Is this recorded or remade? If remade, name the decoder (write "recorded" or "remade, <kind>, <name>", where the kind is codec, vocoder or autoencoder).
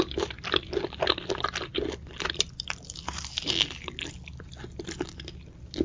recorded